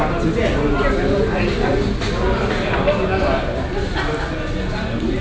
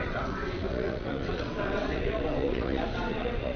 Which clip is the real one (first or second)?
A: first